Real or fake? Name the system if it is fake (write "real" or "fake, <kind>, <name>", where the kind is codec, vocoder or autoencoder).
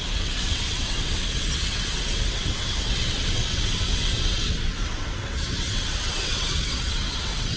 fake, vocoder, WaveNeXt